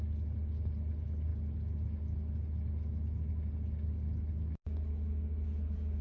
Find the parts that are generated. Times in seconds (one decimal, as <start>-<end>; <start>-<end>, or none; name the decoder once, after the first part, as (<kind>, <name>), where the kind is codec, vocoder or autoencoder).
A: none